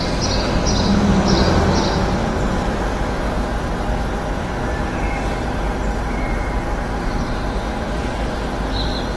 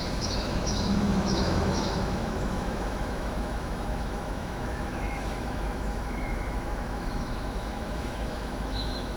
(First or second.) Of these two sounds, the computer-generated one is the second